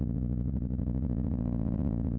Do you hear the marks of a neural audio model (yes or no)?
yes